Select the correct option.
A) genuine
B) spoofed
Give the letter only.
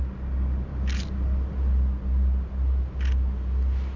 A